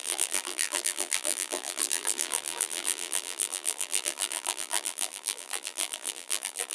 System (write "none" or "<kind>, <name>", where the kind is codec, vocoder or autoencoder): vocoder, BigVGAN v2